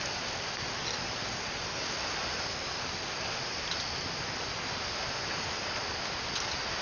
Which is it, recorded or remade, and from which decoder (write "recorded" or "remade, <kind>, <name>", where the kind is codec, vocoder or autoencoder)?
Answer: recorded